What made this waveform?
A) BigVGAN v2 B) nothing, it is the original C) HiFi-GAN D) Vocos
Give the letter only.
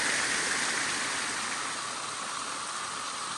B